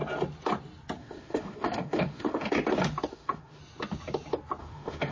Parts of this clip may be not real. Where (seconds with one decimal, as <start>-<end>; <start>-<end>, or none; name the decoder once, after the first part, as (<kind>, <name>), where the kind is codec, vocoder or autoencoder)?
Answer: 1.0-2.5 (autoencoder, DAC-VAE); 3.1-3.6; 4.6-5.1